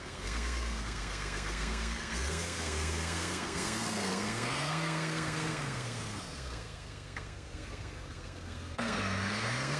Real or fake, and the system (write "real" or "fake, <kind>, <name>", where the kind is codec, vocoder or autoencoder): fake, codec, SNAC